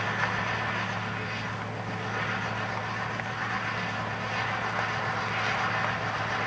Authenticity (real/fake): real